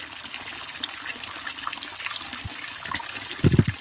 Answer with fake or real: real